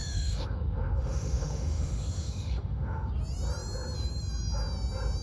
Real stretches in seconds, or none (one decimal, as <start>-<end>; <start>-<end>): 3.1-5.2

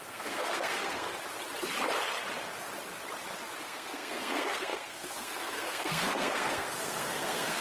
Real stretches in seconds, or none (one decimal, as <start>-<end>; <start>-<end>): 1.1-3.6

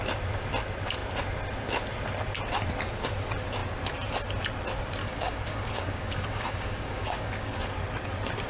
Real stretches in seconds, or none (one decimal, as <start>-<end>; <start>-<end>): 0.0-5.0; 7.6-8.5

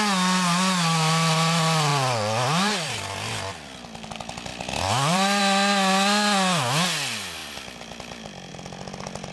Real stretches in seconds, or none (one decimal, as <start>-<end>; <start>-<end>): 0.0-1.9; 3.0-4.5; 5.4-7.4; 8.5-9.3

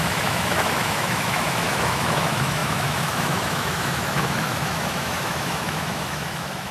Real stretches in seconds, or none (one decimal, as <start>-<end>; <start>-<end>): none

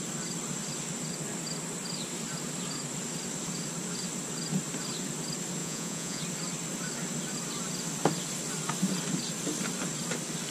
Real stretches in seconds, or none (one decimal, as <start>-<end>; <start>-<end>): 0.0-5.6; 6.2-10.5

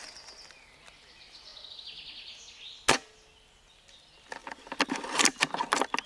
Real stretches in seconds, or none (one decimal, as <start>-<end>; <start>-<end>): 0.0-4.4; 5.5-6.1

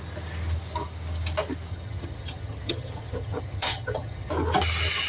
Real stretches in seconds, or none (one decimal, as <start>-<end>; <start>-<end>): 0.0-1.7; 4.3-5.1